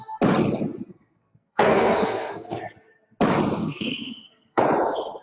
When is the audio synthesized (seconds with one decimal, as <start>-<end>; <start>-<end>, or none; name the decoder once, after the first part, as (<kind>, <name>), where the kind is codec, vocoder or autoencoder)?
0.9-2.6 (codec, SNAC); 3.6-4.6